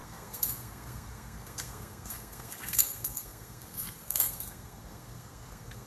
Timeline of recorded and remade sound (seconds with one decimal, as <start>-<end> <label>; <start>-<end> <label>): 0.0-5.9 remade